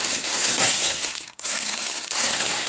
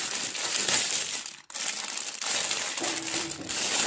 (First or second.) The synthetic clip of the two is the first